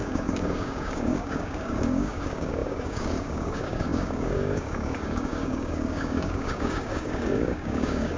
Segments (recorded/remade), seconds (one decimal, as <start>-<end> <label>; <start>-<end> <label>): 0.0-8.2 remade